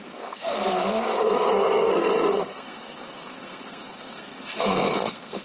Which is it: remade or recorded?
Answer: remade